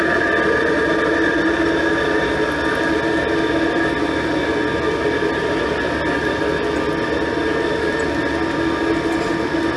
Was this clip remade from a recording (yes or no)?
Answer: no